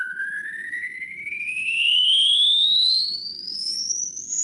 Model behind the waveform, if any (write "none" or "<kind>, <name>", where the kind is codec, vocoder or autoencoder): codec, HILCodec